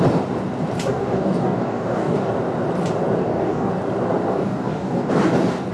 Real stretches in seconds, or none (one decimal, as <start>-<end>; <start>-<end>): 0.0-0.9; 2.3-3.2; 3.7-4.3; 5.1-5.7